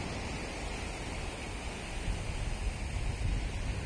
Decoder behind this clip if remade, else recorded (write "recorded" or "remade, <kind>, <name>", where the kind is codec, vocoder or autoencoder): recorded